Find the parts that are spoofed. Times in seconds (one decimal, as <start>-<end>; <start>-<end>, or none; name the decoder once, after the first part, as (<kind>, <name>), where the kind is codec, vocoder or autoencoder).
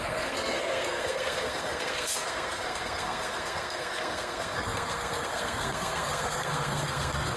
0.0-7.4 (codec, SNAC)